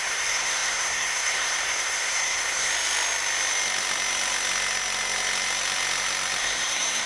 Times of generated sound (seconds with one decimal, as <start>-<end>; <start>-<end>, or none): 0.0-2.7; 6.4-7.1